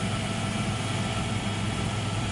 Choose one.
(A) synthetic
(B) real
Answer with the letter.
B